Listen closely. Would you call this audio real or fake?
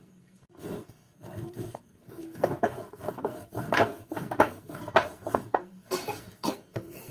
fake